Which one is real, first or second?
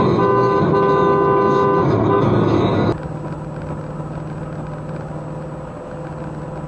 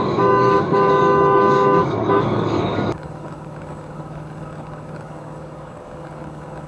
first